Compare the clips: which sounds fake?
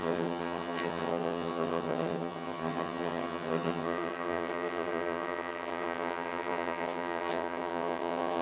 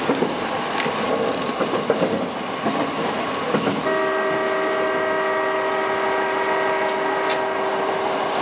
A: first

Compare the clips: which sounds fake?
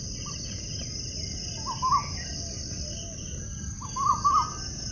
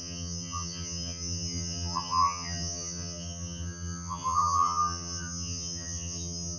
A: second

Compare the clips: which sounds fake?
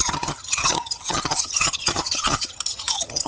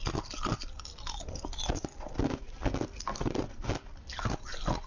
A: first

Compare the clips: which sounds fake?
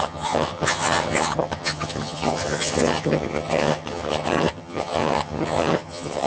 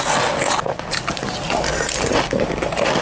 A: first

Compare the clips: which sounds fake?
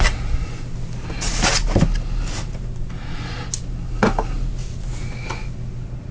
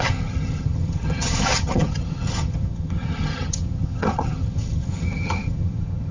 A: second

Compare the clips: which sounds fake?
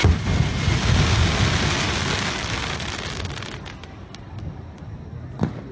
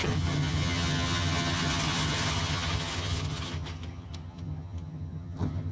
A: second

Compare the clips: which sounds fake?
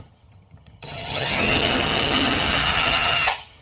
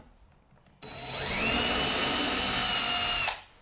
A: first